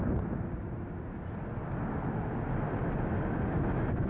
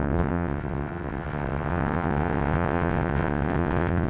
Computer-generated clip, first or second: second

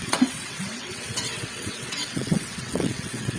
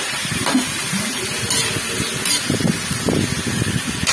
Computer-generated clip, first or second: first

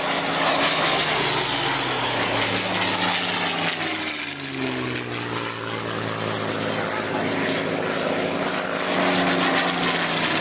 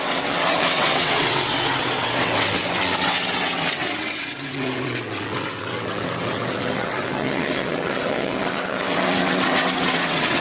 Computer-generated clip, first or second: second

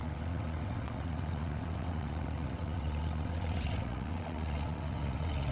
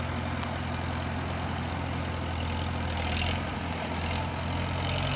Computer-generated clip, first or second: first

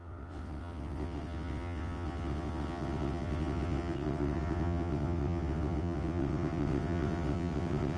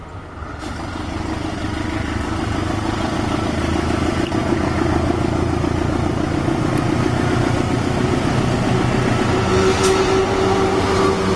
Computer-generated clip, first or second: first